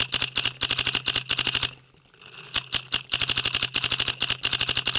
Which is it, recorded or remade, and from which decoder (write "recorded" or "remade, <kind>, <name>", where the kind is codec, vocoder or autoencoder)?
recorded